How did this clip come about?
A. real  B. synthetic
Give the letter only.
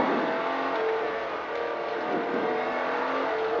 A